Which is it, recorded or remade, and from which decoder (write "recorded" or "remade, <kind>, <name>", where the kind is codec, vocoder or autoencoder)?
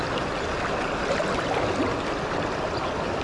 recorded